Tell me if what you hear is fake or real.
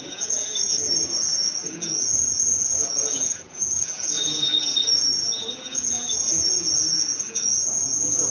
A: fake